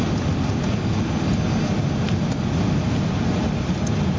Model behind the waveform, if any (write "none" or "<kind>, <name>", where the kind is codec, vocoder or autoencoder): none